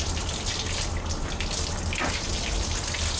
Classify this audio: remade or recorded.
recorded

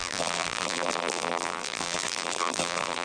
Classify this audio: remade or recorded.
remade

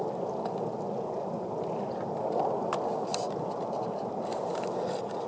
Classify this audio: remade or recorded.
recorded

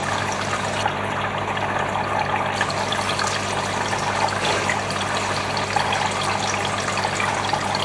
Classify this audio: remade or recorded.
recorded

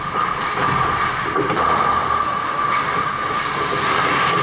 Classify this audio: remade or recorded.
recorded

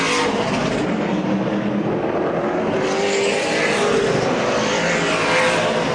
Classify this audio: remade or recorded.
recorded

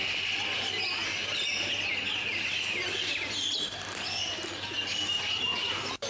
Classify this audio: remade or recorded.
recorded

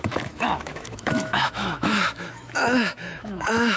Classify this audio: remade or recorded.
remade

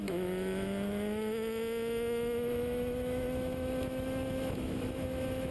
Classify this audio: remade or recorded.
remade